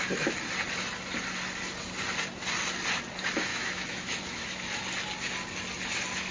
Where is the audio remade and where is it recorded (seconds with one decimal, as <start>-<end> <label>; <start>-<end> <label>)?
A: 0.0-3.5 recorded; 3.5-4.8 remade; 4.8-6.3 recorded